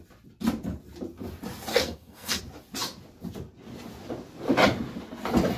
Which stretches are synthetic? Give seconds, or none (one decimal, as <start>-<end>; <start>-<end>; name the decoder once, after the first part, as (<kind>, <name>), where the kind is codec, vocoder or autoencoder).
1.7-2.4 (codec, SNAC)